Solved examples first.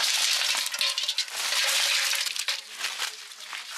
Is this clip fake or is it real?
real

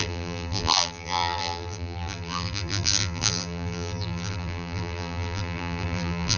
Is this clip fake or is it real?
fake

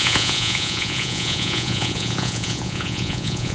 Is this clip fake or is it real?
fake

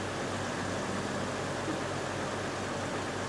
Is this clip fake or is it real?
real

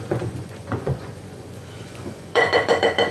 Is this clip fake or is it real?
fake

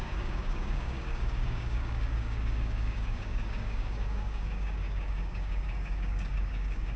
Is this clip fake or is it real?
fake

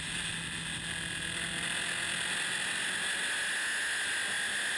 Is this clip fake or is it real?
real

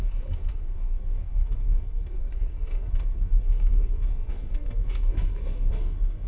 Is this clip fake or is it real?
fake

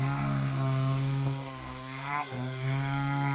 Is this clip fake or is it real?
fake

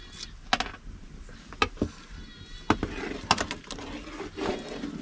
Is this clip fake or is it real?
real